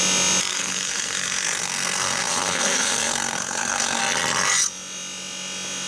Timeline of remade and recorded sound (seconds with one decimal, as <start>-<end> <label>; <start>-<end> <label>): 0.0-0.5 recorded; 0.5-4.0 remade; 4.0-5.9 recorded